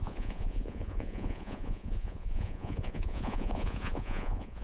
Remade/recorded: remade